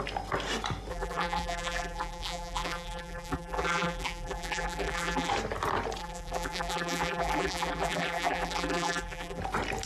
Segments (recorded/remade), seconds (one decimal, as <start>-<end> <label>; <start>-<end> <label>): 0.0-0.9 recorded; 0.9-5.3 remade; 5.3-6.0 recorded; 6.0-9.4 remade; 9.4-9.9 recorded